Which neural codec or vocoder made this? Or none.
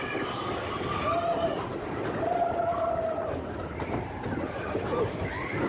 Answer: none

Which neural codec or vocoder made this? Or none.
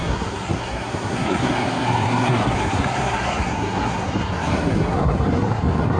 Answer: codec, SNAC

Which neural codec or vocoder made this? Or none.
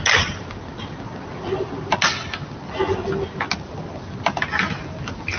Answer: none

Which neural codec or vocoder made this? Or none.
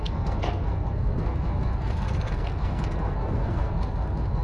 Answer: codec, SNAC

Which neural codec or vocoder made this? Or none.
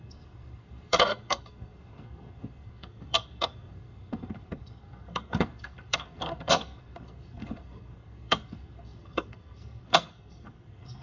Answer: codec, SNAC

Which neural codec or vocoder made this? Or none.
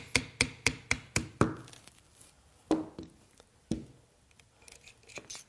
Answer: none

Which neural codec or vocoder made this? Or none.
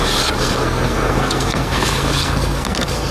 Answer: codec, SNAC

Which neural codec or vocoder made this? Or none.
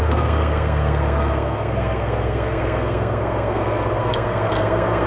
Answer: codec, SNAC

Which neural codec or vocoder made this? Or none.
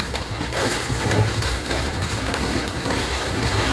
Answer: codec, SNAC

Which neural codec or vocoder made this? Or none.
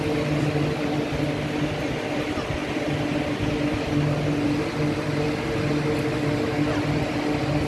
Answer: none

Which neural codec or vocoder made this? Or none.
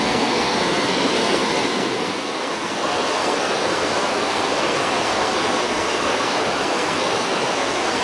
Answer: codec, SNAC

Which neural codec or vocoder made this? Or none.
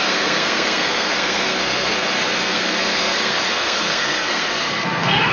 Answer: codec, SNAC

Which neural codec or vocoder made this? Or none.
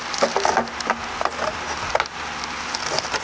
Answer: none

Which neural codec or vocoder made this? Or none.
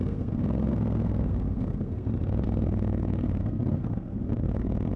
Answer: codec, SNAC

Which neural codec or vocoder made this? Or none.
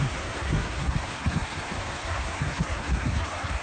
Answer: codec, SNAC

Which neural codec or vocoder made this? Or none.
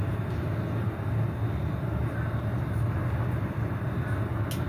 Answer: none